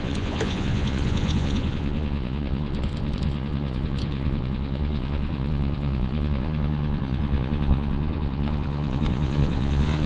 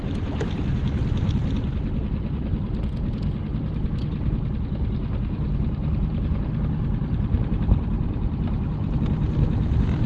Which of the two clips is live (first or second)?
second